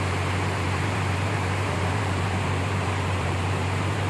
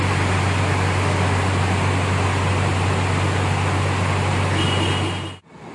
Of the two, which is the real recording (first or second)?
second